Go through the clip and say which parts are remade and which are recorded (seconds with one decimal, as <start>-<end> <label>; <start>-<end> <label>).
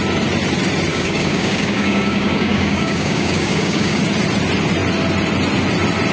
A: 0.0-0.9 recorded; 0.9-4.0 remade; 4.0-6.1 recorded